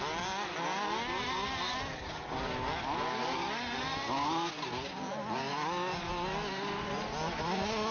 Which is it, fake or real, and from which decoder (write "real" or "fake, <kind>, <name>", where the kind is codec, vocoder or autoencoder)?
real